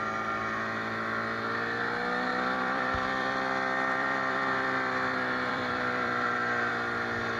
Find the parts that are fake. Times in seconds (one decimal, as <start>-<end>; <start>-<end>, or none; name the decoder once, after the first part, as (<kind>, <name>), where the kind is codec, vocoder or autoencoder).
2.3-6.7 (vocoder, BigVGAN v2)